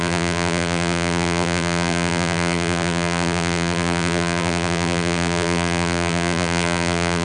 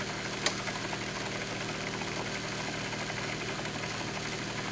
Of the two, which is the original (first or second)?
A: second